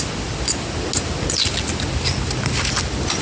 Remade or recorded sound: recorded